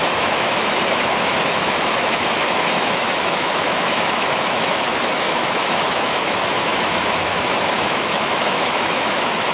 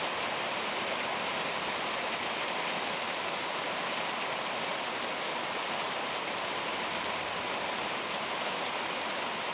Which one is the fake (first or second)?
first